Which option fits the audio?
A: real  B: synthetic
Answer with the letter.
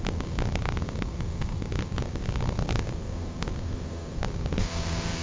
B